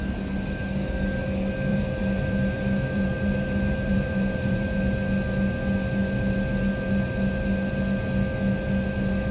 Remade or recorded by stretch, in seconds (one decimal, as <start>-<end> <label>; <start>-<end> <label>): 0.0-1.7 recorded; 1.7-4.8 remade; 4.8-9.3 recorded